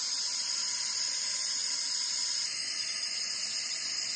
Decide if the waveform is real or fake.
fake